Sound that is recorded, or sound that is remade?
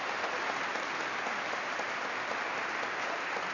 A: recorded